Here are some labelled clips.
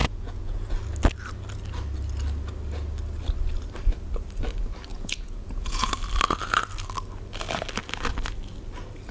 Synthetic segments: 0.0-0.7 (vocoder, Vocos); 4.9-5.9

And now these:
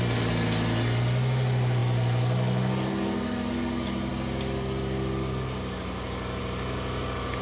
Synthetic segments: none

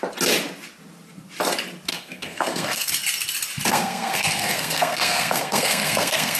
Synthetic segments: 1.9-2.9 (codec, SNAC); 3.7-6.4

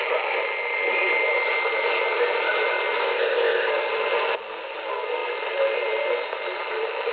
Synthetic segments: 3.0-3.7 (codec, ZipCodec)